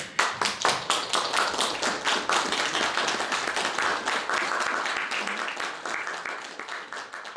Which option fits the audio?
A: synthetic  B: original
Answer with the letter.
B